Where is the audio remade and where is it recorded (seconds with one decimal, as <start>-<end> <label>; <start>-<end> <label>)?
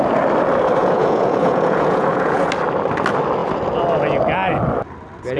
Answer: 0.0-0.8 recorded; 0.8-2.5 remade; 2.5-5.4 recorded